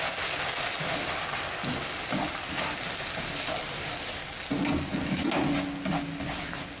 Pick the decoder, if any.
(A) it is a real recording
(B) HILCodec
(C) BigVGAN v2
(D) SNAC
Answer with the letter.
A